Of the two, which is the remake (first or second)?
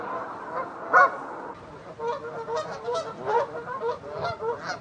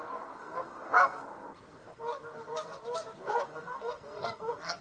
second